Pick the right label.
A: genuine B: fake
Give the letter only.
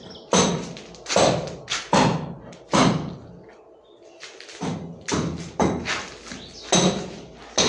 A